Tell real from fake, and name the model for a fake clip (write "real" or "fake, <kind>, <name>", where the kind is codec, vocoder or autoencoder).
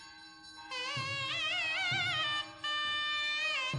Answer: real